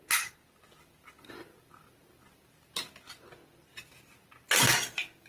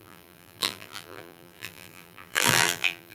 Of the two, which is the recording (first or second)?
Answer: first